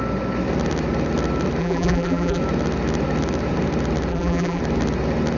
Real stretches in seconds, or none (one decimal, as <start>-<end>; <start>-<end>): 0.0-1.6; 2.4-4.1; 4.6-5.4